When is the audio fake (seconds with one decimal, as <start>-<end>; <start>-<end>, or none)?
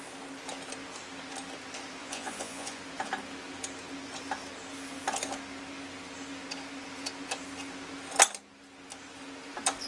2.0-2.8